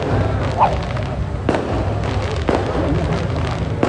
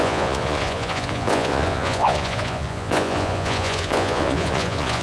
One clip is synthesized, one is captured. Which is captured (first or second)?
first